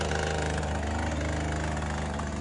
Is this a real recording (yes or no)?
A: yes